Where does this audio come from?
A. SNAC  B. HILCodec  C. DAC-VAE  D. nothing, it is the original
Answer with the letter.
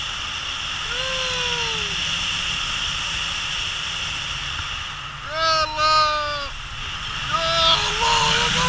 D